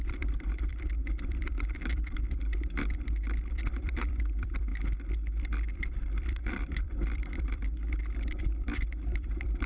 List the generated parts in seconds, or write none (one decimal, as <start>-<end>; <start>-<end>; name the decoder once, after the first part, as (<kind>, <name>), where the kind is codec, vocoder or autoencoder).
0.0-4.7 (vocoder, BigVGAN v2); 6.0-7.6; 8.4-9.7